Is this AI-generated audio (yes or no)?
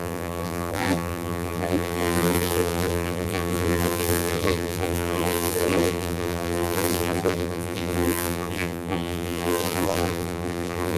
yes